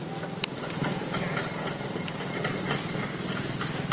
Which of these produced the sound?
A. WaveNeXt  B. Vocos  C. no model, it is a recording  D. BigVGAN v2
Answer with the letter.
C